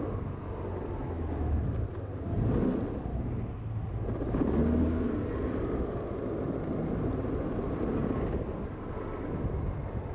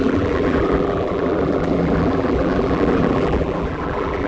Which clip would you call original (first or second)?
first